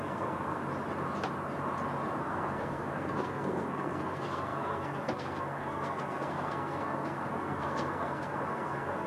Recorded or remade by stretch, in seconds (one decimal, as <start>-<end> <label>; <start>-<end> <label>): 0.0-0.6 remade; 0.6-2.2 recorded; 2.2-9.1 remade